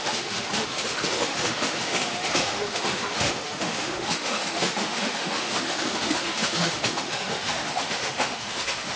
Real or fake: fake